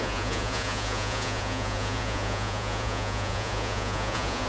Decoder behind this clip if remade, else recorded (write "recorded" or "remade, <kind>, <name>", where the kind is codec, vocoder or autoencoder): remade, vocoder, Vocos